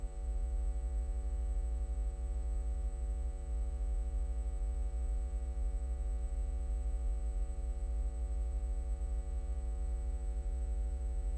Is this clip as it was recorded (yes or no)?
no